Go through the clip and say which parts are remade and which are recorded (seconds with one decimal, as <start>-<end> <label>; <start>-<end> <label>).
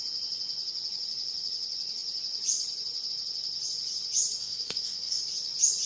0.0-4.4 recorded; 4.4-5.2 remade; 5.2-5.9 recorded